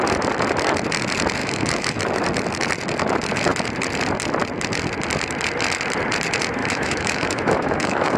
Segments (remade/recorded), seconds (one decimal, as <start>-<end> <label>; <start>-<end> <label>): 0.0-1.4 recorded; 1.4-2.0 remade; 2.0-6.6 recorded; 6.6-8.2 remade

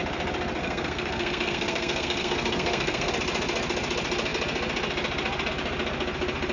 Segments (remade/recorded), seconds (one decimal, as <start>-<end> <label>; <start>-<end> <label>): 0.0-0.6 recorded; 0.6-3.1 remade; 3.1-6.5 recorded

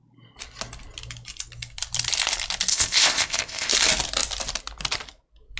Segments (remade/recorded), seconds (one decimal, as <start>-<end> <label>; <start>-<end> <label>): 0.0-2.7 recorded; 2.7-3.7 remade; 3.7-5.6 recorded

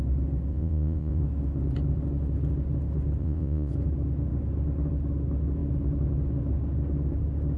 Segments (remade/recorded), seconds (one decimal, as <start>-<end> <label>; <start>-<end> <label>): 0.0-0.5 recorded; 0.5-1.2 remade; 1.2-3.2 recorded; 3.2-3.7 remade; 3.7-7.6 recorded